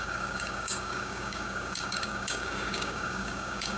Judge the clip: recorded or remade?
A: remade